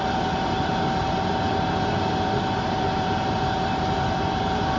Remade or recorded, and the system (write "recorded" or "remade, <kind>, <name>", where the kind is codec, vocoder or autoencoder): remade, vocoder, BigVGAN v2